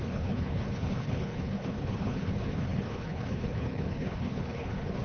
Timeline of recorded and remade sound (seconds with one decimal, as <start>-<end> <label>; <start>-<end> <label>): 0.0-5.0 remade